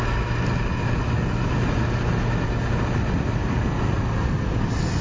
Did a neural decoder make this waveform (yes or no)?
no